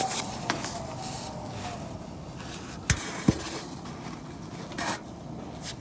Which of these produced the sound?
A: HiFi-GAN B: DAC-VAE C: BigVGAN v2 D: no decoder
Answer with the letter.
D